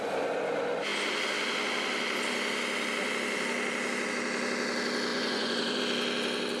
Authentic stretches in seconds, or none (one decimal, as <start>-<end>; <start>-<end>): 0.0-5.1; 5.8-6.6